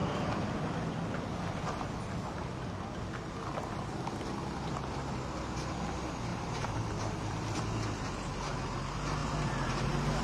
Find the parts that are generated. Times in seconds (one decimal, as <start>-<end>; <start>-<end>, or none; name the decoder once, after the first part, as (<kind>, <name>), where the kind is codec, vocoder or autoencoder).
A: 6.3-7.6 (vocoder, BigVGAN v2); 9.2-10.2